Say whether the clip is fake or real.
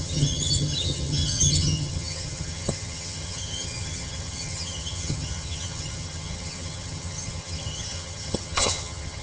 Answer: fake